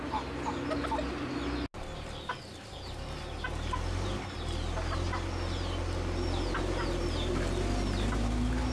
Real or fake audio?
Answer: real